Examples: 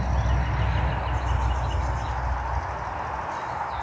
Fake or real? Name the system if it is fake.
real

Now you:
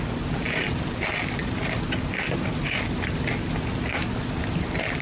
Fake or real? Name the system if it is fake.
real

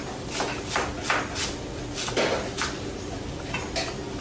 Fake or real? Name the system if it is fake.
real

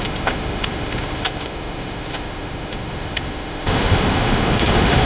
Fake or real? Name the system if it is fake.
fake, autoencoder, DAC-VAE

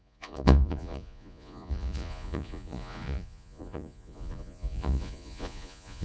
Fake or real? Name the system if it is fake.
fake, vocoder, Vocos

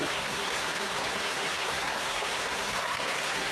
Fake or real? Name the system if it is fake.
fake, codec, SNAC